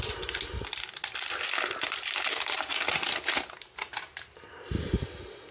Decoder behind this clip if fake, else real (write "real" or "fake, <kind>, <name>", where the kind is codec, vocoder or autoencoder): real